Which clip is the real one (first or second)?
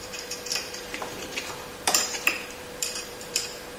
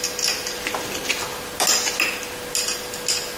second